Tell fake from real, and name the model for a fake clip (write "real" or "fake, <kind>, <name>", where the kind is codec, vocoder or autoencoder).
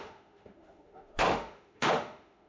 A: fake, autoencoder, DAC-VAE